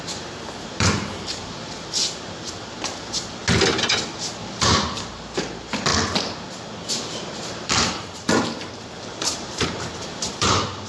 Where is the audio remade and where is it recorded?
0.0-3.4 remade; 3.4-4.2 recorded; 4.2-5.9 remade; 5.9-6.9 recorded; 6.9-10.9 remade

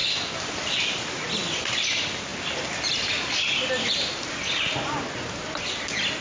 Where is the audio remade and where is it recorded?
0.0-6.2 recorded

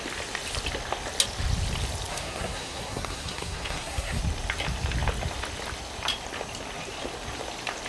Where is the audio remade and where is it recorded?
0.0-2.1 recorded; 2.1-4.2 remade; 4.2-7.9 recorded